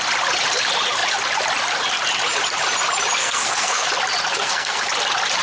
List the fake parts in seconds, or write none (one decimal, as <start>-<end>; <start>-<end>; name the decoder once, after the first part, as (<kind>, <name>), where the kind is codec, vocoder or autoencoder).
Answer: 3.2-3.9 (codec, SNAC); 4.3-4.9

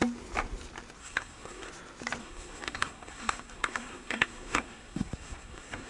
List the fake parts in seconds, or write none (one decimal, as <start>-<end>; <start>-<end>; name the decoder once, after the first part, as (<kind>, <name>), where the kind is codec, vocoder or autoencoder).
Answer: 1.0-1.7 (codec, SNAC); 2.2-5.9

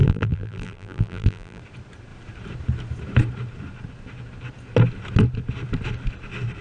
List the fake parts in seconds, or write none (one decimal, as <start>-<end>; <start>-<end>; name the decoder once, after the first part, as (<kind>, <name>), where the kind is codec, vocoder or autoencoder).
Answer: 0.0-1.6 (vocoder, BigVGAN v2)